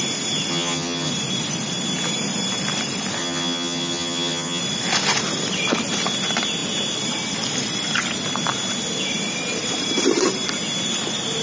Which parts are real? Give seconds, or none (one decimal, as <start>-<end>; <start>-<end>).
0.0-0.5; 1.1-3.2; 4.6-11.4